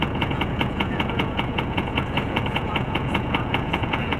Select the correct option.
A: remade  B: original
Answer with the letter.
A